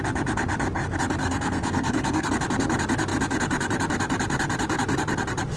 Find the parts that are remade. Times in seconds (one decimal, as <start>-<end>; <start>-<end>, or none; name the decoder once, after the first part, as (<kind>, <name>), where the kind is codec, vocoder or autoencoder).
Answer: 1.2-2.3 (codec, SNAC)